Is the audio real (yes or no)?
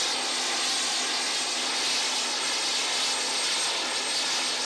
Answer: yes